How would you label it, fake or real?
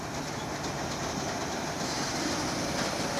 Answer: real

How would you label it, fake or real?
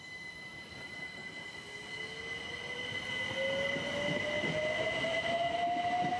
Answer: real